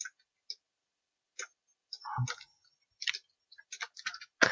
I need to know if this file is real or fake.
real